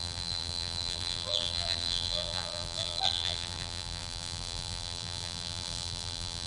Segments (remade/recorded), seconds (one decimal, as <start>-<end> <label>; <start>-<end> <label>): 0.0-6.5 remade